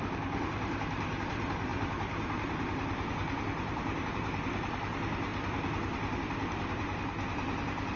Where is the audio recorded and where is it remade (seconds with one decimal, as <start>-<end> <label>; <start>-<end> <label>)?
0.0-8.0 recorded